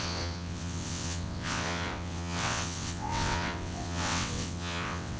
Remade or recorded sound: remade